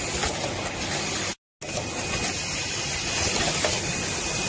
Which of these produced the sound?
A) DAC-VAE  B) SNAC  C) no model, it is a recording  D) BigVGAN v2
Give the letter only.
C